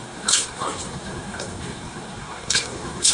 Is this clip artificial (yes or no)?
yes